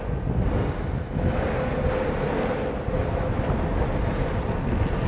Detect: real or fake real